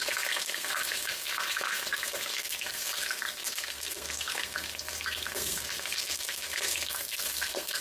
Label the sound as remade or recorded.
remade